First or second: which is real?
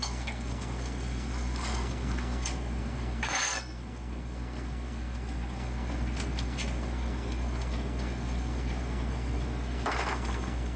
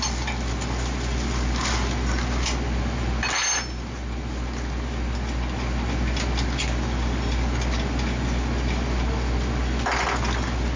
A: second